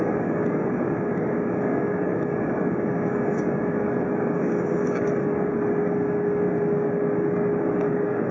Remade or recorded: remade